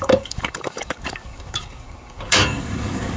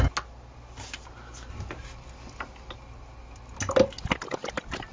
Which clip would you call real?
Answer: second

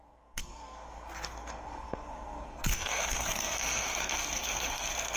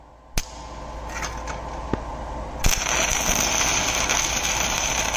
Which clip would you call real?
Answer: second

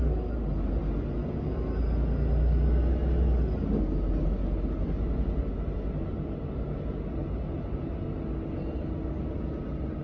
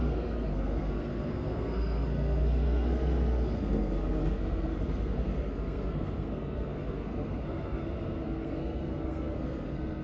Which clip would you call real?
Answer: first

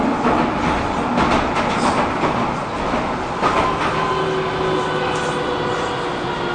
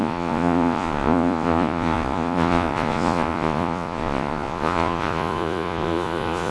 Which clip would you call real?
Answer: first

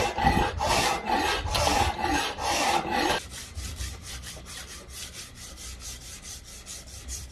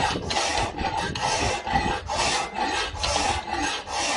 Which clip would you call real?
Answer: second